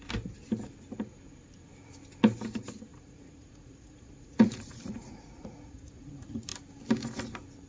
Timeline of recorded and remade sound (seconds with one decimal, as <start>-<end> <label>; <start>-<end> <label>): 0.0-2.9 recorded; 2.9-6.1 remade; 6.1-7.7 recorded

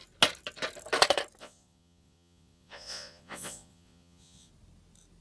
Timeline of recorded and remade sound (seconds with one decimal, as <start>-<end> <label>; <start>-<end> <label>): 0.0-1.4 recorded; 1.4-4.5 remade; 4.5-5.2 recorded